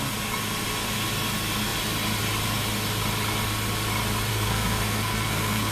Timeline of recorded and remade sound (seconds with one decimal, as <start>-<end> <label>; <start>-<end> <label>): 0.0-4.3 recorded; 4.3-5.7 remade